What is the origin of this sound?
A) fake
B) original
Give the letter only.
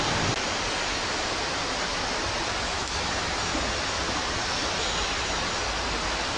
B